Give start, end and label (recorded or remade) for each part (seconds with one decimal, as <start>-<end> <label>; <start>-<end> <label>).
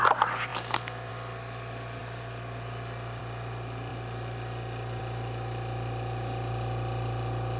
0.0-7.6 recorded